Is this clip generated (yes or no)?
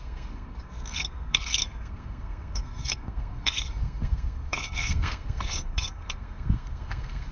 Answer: yes